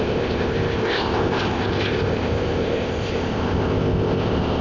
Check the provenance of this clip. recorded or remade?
remade